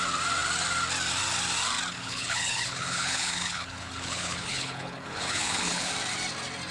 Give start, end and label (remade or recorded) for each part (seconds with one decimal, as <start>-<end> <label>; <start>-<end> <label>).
0.0-1.9 recorded; 1.9-5.9 remade; 5.9-6.7 recorded